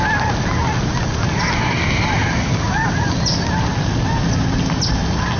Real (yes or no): yes